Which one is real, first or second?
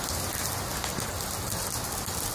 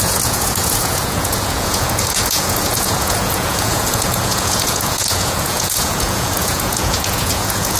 first